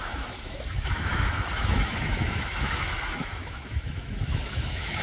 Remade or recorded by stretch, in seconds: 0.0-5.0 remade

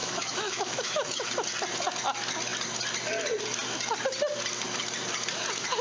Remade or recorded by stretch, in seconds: 0.0-1.3 remade; 1.3-5.8 recorded

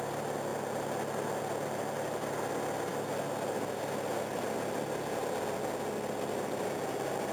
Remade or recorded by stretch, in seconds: 0.0-7.3 recorded

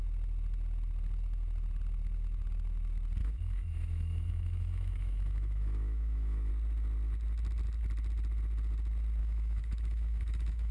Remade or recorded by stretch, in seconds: 0.0-3.2 recorded; 3.2-6.5 remade; 6.5-9.2 recorded; 9.2-10.7 remade

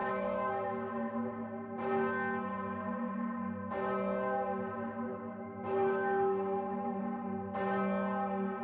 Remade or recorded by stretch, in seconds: 0.0-1.3 remade; 1.3-5.1 recorded; 5.1-7.0 remade; 7.0-8.6 recorded